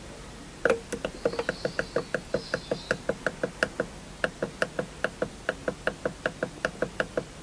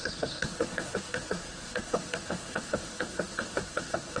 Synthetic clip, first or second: second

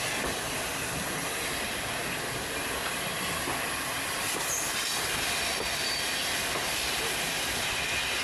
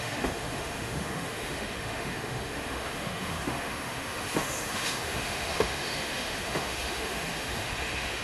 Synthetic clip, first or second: second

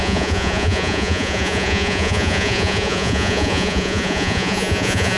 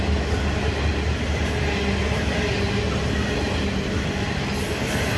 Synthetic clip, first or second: first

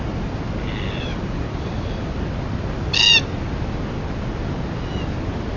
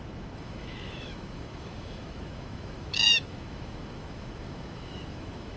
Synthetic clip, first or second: second